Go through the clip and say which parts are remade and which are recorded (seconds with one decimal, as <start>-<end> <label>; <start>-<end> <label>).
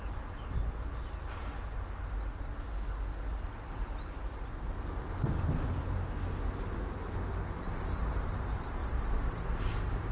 0.0-10.1 recorded